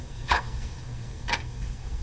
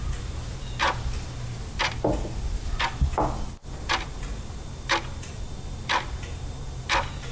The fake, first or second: first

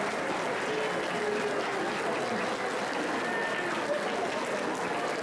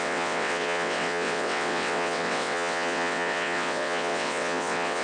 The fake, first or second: second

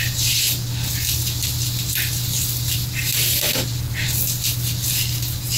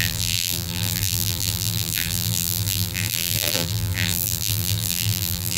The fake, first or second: second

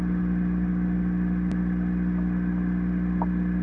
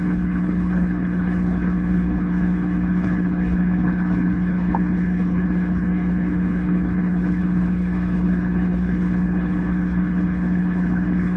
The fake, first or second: second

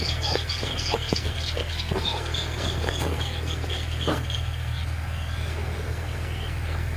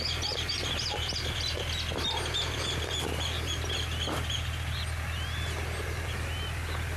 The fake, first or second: first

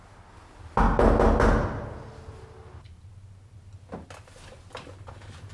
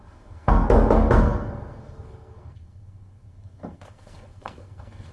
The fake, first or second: second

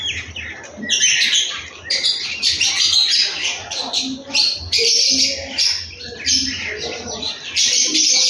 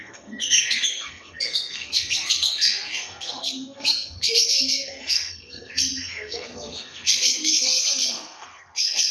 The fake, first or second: second